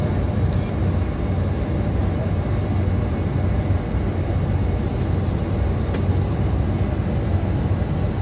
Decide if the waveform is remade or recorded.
recorded